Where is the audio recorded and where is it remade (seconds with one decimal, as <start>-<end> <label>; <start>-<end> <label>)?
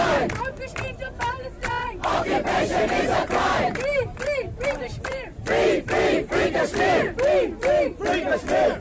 0.0-1.8 recorded; 1.8-5.4 remade; 5.4-8.8 recorded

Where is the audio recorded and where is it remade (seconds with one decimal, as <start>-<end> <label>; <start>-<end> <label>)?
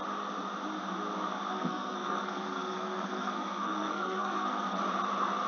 0.0-1.5 recorded; 1.5-4.8 remade; 4.8-5.5 recorded